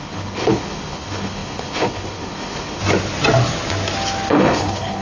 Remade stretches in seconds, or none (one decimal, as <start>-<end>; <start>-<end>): 0.0-2.8; 4.3-5.0